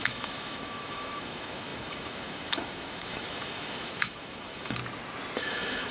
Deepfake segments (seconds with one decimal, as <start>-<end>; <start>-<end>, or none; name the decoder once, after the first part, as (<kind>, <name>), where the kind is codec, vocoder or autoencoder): 0.0-4.8 (autoencoder, DAC-VAE); 5.4-5.9